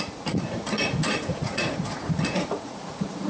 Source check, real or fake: fake